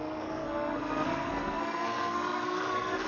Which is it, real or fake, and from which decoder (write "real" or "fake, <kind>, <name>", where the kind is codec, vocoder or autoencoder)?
fake, codec, SNAC